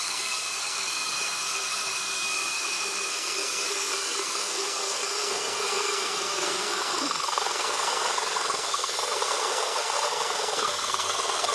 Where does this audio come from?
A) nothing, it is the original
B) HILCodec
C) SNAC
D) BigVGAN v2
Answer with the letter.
C